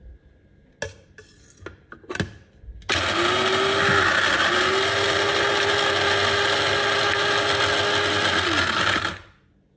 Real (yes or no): yes